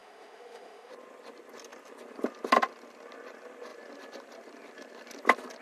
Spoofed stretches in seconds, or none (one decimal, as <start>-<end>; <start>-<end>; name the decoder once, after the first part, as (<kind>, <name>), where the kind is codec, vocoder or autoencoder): 0.0-0.9 (autoencoder, DAC-VAE)

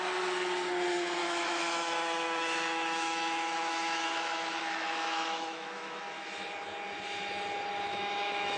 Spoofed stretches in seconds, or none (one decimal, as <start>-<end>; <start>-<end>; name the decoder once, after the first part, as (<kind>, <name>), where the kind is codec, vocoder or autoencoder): 1.2-6.0 (autoencoder, DAC-VAE); 7.9-8.6

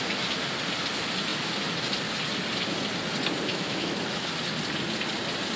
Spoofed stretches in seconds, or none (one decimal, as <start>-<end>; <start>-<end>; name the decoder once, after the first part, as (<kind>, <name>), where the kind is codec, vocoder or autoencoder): 3.5-4.3 (autoencoder, DAC-VAE)

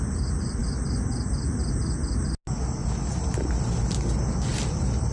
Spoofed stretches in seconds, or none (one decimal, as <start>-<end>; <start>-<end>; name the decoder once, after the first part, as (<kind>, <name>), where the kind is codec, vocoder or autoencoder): 2.8-3.8 (vocoder, BigVGAN v2); 4.5-5.1

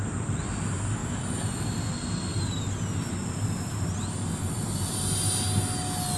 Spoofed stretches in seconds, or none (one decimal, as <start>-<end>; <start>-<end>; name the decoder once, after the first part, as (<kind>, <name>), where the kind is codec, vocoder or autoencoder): 1.0-1.9 (vocoder, BigVGAN v2)

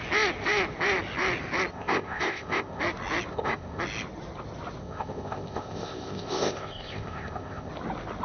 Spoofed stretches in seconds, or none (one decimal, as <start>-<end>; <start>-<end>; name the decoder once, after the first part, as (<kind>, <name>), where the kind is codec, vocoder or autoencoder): 1.7-2.8 (codec, ZipCodec); 3.3-3.8; 4.8-7.7